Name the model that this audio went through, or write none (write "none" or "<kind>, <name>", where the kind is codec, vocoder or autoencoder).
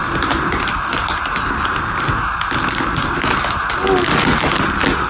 none